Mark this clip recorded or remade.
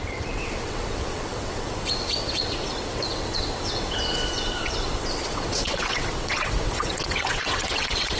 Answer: remade